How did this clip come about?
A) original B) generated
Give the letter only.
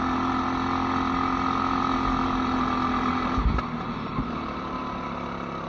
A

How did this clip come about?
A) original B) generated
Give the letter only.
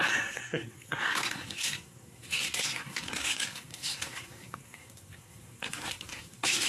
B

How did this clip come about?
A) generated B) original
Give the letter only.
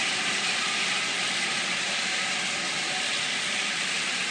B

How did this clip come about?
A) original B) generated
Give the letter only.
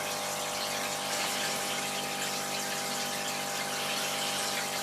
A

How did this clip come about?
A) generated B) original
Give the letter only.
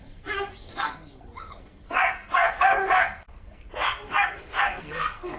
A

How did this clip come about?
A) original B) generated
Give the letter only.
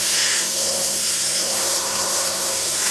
B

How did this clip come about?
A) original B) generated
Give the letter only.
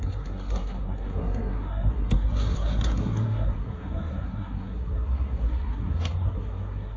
B